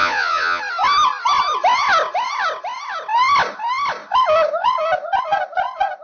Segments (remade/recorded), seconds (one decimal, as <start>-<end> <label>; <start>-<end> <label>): 0.0-0.6 remade; 0.6-6.0 recorded